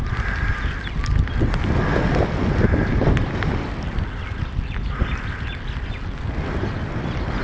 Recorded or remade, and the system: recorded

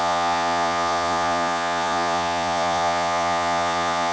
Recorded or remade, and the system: remade, vocoder, Vocos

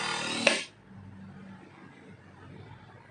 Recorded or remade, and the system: recorded